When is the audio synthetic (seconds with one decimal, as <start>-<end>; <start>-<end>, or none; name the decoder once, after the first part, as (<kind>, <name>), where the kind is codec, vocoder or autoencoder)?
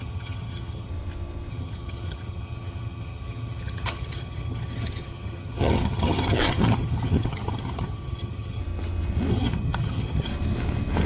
0.0-0.9 (vocoder, HiFi-GAN); 1.5-8.6; 9.3-10.3